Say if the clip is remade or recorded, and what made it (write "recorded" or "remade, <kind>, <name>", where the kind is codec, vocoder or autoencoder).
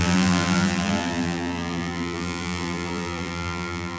remade, vocoder, BigVGAN v2